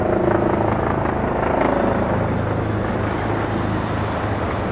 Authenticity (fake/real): real